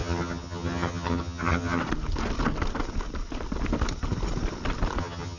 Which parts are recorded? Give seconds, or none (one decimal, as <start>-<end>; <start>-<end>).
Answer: 1.8-5.0

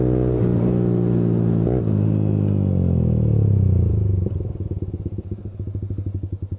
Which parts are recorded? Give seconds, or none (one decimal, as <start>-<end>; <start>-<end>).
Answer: 0.0-6.6